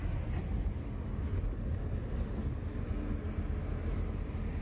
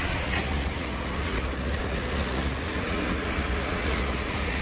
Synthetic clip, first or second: second